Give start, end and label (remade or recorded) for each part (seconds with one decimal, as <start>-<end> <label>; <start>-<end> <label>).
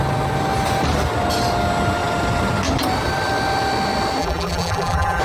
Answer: 0.0-4.2 recorded; 4.2-5.2 remade